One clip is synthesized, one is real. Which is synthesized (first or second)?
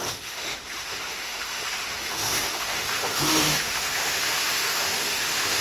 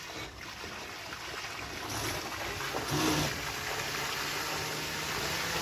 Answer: first